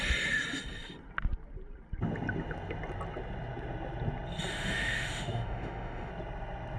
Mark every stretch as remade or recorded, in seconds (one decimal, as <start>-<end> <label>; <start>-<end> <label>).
0.0-4.5 recorded; 4.5-6.1 remade; 6.1-6.8 recorded